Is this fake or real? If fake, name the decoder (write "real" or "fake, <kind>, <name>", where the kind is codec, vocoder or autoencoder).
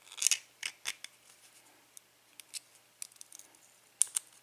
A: real